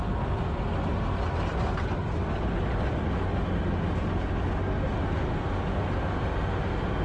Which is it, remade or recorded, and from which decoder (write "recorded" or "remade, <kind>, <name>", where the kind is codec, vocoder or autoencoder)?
recorded